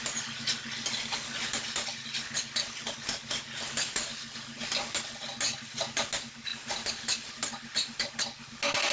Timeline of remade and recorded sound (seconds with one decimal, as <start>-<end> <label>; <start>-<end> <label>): 0.0-8.9 recorded